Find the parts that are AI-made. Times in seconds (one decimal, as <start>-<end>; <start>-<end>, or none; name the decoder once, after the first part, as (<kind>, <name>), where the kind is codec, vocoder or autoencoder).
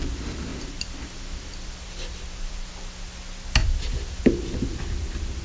0.5-2.7 (vocoder, BigVGAN v2); 3.6-5.4